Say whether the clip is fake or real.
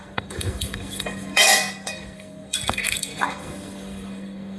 fake